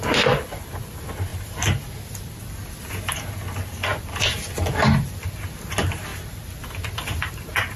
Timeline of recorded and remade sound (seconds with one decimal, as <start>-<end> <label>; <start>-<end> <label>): 0.0-1.3 recorded; 1.3-2.8 remade; 2.8-3.9 recorded; 3.9-5.4 remade; 5.4-6.1 recorded; 6.1-7.8 remade